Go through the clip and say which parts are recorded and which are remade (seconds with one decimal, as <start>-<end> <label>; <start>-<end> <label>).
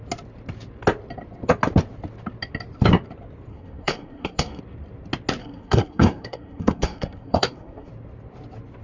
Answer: 0.0-3.5 recorded; 3.5-4.6 remade; 4.6-5.4 recorded; 5.4-7.9 remade; 7.9-8.8 recorded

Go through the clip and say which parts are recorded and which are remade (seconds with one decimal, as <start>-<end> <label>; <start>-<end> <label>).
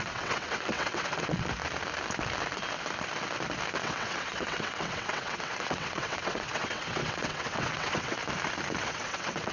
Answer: 0.0-1.6 remade; 1.6-3.8 recorded; 3.8-8.2 remade; 8.2-8.8 recorded; 8.8-9.5 remade